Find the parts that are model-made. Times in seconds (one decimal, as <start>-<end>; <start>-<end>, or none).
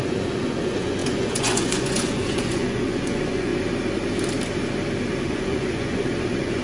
0.0-3.5; 5.2-6.6